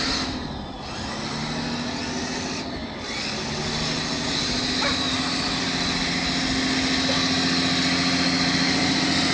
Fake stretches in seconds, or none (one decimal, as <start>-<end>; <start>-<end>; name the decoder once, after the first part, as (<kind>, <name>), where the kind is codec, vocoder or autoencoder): none